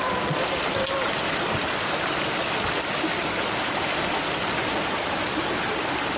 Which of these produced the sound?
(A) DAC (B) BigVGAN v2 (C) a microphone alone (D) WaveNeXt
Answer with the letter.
B